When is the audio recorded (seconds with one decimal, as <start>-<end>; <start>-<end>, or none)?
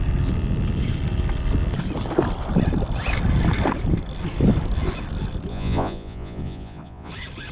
0.0-5.5; 7.1-7.5